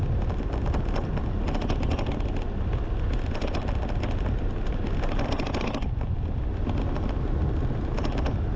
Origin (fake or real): real